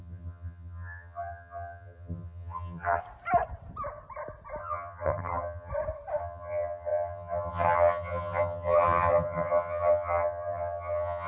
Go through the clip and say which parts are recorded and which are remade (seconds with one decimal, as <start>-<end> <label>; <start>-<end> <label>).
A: 0.0-3.0 remade; 3.0-4.6 recorded; 4.6-5.7 remade; 5.7-6.2 recorded; 6.2-11.3 remade